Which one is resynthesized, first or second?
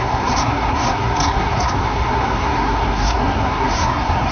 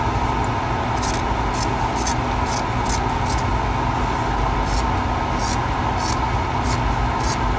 first